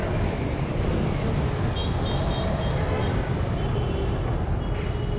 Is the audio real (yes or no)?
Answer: yes